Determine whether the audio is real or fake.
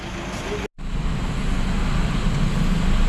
real